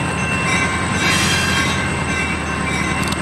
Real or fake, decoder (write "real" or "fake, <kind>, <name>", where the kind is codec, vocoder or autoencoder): real